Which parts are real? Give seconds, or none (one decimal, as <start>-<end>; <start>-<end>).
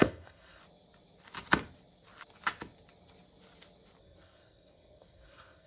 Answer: 0.6-4.0